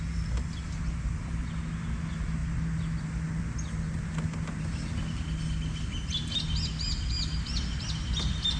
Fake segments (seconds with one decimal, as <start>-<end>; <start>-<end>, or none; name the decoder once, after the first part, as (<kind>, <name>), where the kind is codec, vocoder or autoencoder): none